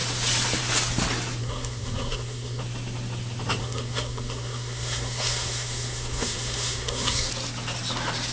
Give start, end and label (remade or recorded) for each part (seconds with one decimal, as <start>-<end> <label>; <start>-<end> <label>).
0.0-1.4 recorded; 1.4-2.6 remade; 2.6-3.6 recorded; 3.6-7.3 remade; 7.3-8.3 recorded